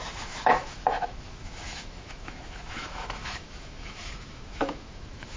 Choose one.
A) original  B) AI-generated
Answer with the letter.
B